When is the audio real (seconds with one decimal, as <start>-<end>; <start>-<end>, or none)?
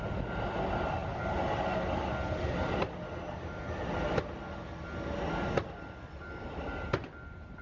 0.0-7.6